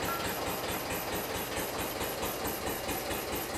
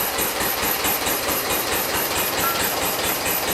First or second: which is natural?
first